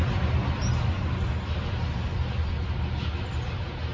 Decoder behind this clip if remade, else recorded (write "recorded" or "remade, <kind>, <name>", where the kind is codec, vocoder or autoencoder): recorded